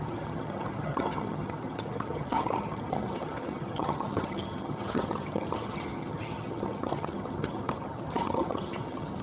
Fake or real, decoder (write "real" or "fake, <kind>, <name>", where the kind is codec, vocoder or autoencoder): fake, vocoder, HiFi-GAN